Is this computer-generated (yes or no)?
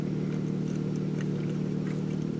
no